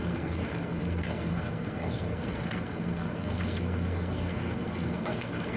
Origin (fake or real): fake